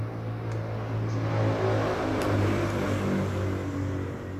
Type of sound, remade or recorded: recorded